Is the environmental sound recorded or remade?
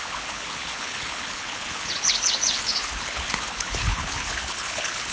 remade